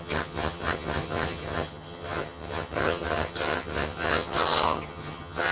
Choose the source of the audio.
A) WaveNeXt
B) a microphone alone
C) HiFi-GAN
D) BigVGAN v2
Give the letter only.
C